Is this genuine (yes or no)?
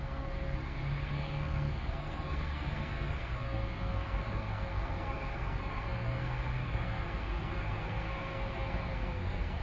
no